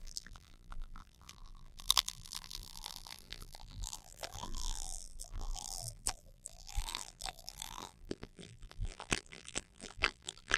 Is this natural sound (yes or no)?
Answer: no